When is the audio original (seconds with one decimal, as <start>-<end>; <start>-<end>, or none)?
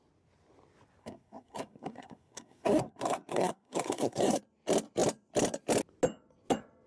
0.0-1.0; 4.4-6.9